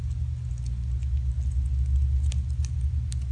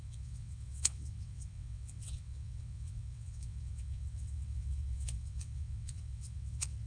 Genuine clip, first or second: first